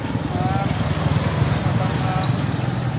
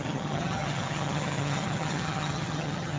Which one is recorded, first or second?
first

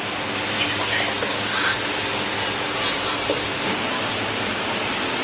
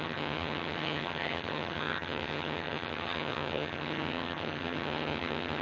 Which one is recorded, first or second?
first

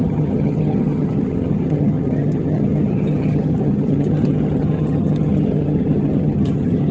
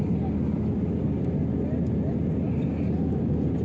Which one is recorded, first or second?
second